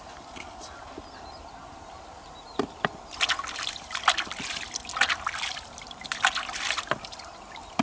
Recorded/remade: recorded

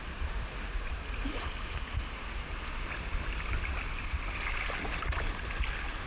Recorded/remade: recorded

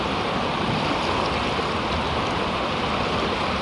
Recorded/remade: recorded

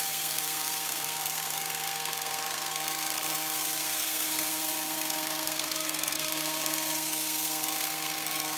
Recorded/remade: remade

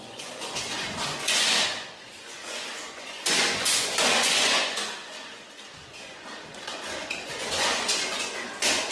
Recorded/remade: remade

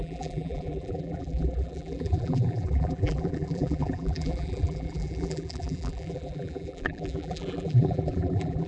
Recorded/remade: remade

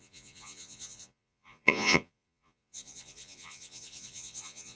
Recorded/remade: remade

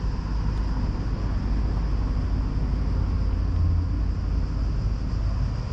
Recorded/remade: recorded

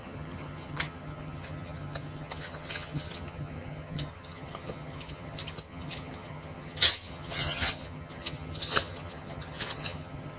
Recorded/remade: remade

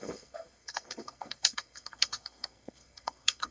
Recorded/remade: remade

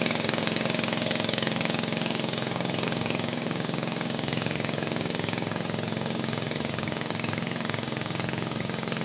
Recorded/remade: remade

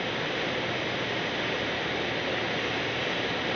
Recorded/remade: recorded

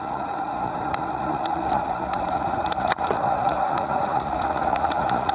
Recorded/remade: remade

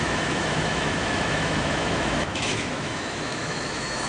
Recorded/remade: remade